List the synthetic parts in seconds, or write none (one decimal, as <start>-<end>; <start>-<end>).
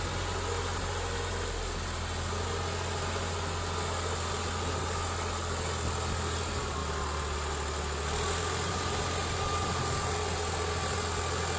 none